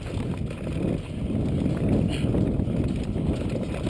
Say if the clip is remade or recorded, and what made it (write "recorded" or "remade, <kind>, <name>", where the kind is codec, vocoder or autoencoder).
recorded